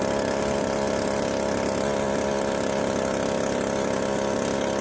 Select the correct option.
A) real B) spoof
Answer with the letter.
A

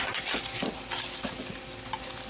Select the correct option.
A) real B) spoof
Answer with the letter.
A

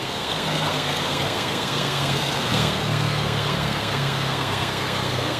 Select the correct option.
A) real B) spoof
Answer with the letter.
B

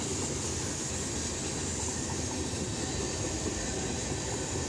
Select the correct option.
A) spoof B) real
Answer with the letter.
B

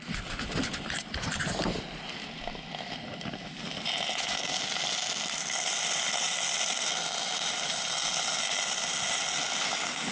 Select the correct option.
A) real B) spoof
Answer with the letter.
A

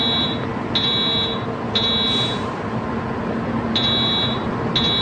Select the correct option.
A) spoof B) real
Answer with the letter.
B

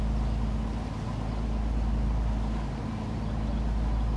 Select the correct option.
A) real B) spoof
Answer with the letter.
A